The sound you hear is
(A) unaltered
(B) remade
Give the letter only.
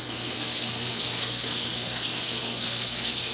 B